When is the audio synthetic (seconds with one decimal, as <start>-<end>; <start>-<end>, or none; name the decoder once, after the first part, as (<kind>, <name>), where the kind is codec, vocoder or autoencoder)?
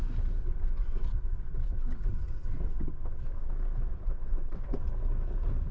0.4-3.5 (vocoder, WaveNeXt); 3.9-4.9